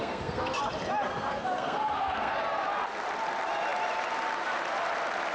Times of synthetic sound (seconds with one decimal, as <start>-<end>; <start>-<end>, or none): 0.0-0.6; 1.1-2.4